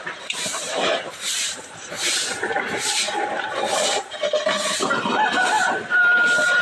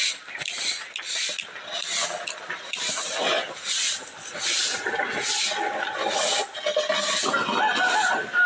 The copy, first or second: first